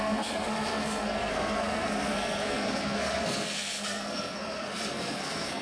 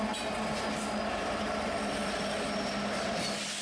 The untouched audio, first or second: second